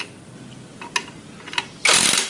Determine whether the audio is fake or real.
real